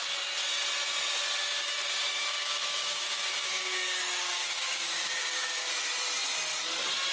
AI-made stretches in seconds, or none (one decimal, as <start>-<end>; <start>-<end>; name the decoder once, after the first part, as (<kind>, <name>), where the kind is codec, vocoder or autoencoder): 1.4-5.7 (codec, DAC)